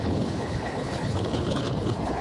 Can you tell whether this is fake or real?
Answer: fake